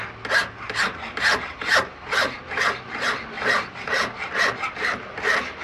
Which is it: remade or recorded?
recorded